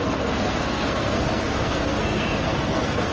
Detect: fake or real fake